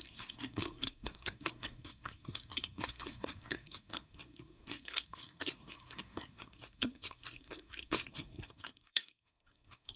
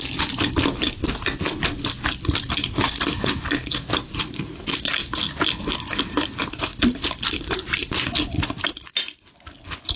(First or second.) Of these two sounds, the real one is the second